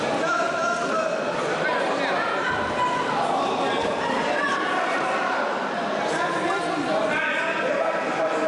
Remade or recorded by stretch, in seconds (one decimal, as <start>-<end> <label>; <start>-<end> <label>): 0.0-3.8 recorded; 3.8-6.0 remade; 6.0-8.5 recorded